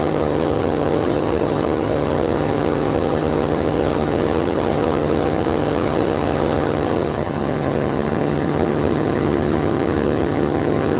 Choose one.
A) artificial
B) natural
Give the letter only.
A